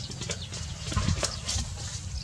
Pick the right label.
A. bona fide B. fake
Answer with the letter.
A